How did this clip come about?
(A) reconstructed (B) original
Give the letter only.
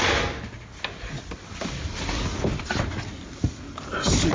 B